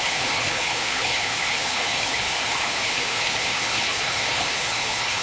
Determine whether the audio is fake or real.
fake